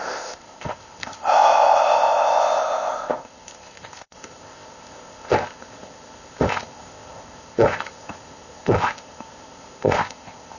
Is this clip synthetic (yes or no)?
yes